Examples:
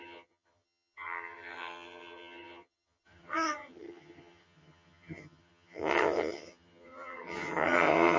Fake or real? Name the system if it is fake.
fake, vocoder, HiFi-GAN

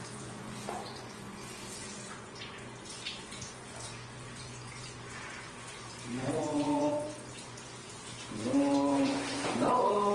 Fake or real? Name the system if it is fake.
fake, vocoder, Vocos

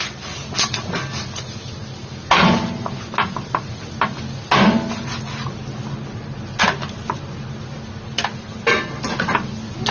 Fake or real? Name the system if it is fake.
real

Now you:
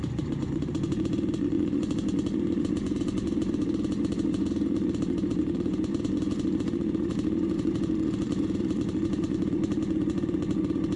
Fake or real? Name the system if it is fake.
fake, vocoder, Vocos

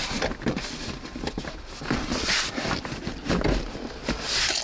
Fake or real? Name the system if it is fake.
real